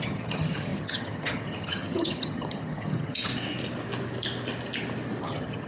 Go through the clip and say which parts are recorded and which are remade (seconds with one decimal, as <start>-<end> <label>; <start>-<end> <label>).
0.0-3.3 remade; 3.3-5.2 recorded; 5.2-5.7 remade